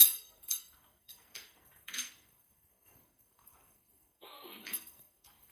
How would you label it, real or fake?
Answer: fake